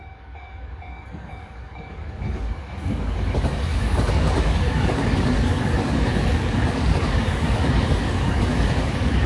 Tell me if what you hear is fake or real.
fake